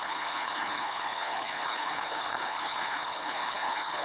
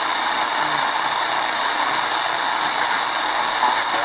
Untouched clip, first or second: second